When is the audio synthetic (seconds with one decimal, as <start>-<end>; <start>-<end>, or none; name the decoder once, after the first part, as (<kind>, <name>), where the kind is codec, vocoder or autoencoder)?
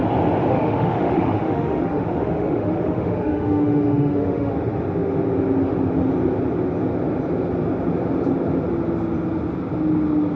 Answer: 0.5-4.5 (autoencoder, DAC-VAE)